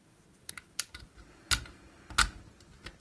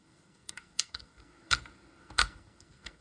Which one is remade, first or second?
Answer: second